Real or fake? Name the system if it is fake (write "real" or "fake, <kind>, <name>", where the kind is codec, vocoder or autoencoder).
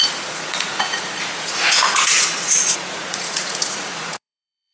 fake, vocoder, Vocos